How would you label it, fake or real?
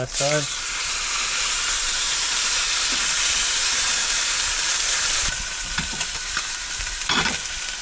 fake